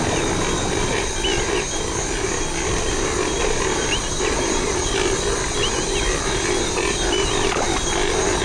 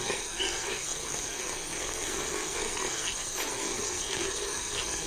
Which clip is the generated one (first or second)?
second